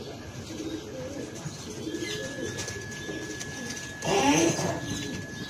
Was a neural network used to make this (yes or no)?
no